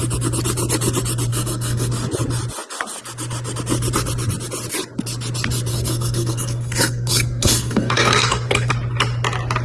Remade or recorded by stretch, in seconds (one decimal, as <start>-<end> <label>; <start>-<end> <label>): 0.0-1.3 recorded; 1.3-1.9 remade; 1.9-5.7 recorded; 5.7-8.7 remade; 8.7-9.6 recorded